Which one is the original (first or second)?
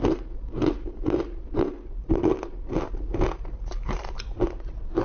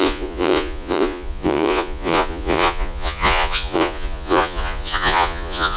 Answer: first